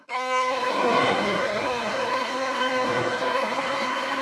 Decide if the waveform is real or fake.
fake